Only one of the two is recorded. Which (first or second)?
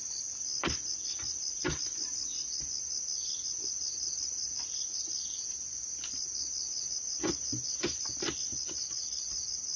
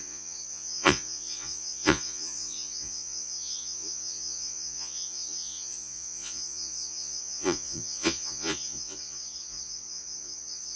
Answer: first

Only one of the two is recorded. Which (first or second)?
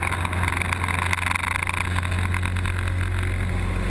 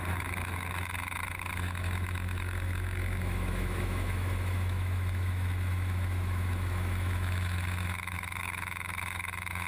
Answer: first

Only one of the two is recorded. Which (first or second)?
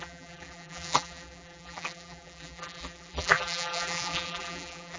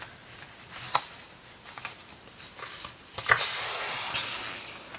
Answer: second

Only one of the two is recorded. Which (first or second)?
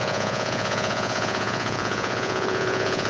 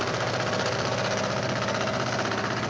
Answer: second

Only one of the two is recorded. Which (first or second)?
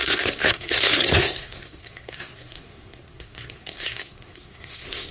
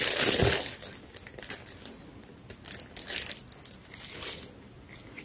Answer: second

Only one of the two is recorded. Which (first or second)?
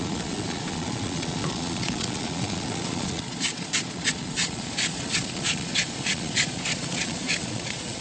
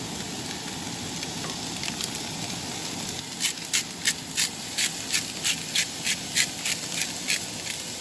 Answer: second